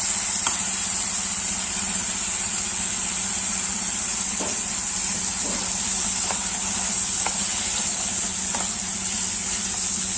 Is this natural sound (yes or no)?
yes